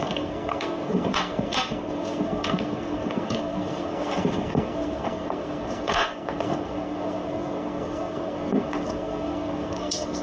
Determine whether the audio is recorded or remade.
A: remade